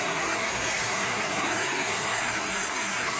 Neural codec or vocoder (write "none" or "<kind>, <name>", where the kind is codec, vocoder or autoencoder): codec, SNAC